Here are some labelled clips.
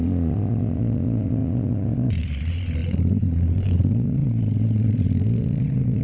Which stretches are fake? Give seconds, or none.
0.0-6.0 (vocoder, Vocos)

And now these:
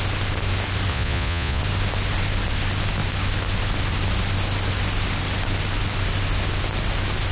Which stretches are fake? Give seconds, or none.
0.9-1.6 (vocoder, Vocos)

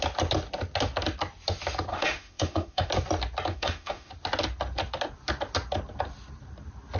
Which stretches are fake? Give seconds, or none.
1.9-2.9 (autoencoder, DAC-VAE); 3.5-4.1

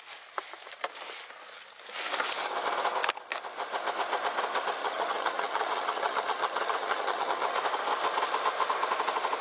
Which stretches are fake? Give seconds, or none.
4.8-7.6 (vocoder, HiFi-GAN)

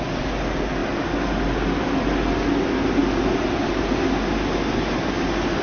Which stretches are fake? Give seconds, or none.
none

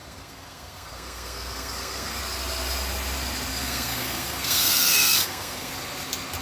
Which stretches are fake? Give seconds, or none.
0.0-2.2 (codec, SNAC); 3.5-5.7

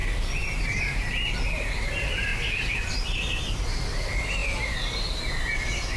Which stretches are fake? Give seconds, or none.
0.8-6.0 (vocoder, BigVGAN v2)